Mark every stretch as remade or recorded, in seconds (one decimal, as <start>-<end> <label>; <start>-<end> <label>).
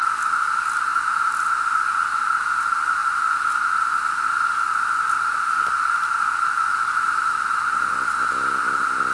0.0-6.7 recorded; 6.7-7.7 remade; 7.7-9.1 recorded